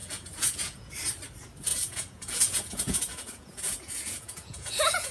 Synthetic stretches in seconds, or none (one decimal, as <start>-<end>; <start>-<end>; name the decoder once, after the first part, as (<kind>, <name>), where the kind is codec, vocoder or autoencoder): 0.0-0.9 (vocoder, Vocos); 1.7-5.1